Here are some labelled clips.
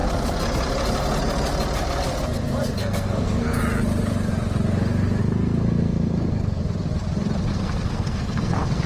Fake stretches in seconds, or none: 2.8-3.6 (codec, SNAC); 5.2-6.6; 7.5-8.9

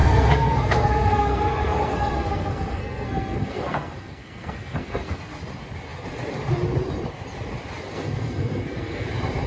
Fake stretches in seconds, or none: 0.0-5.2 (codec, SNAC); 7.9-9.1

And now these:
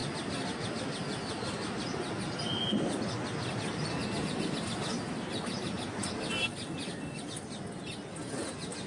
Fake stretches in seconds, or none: none